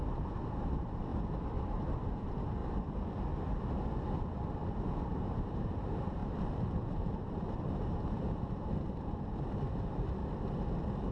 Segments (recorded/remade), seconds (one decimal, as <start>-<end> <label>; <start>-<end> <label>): 0.0-1.1 remade; 1.1-1.6 recorded; 1.6-2.6 remade; 2.6-4.8 recorded; 4.8-6.2 remade; 6.2-6.9 recorded; 6.9-10.2 remade; 10.2-11.1 recorded